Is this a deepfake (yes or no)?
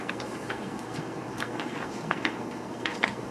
yes